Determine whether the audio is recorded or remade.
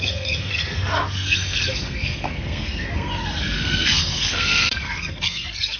remade